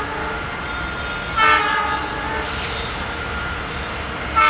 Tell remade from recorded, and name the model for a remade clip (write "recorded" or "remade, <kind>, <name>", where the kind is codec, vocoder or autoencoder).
recorded